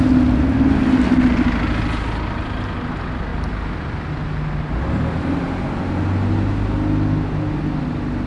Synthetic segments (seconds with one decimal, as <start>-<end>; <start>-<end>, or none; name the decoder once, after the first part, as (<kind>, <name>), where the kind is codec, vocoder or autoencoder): none